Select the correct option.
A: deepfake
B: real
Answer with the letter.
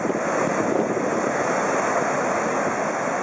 B